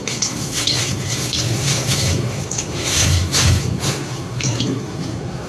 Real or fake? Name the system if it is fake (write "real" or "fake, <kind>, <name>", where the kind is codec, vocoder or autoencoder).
fake, codec, SNAC